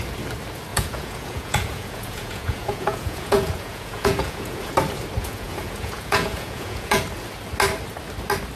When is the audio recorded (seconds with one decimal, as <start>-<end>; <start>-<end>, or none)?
0.0-0.7; 4.7-5.2; 7.0-8.6